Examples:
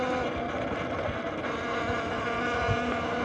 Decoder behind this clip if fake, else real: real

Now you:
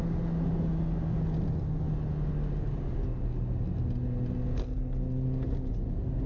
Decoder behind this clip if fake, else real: real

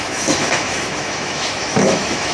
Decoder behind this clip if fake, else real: fake, autoencoder, DAC-VAE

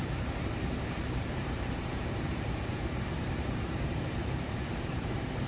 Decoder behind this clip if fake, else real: fake, vocoder, BigVGAN v2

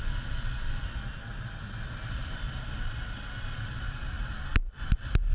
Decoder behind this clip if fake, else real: real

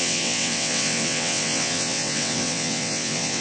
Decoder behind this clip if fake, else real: fake, vocoder, WaveNeXt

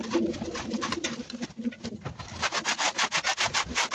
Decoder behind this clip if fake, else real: fake, vocoder, BigVGAN v2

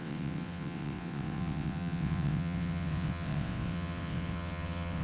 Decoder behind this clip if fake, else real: fake, vocoder, WaveNeXt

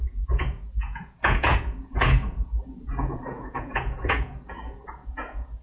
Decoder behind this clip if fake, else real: fake, vocoder, Vocos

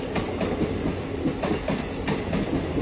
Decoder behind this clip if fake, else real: real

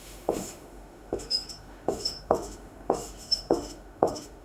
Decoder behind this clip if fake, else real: fake, autoencoder, DAC-VAE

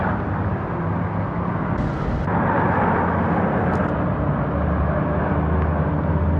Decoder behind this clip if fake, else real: real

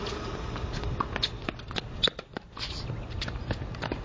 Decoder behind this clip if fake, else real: real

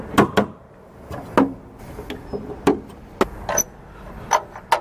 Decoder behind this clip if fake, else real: real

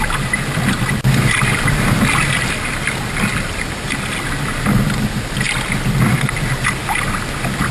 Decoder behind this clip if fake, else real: real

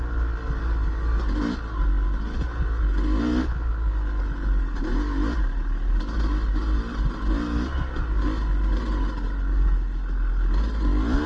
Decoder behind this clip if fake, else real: real